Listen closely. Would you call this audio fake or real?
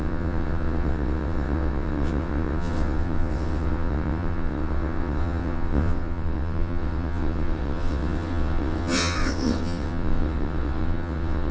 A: fake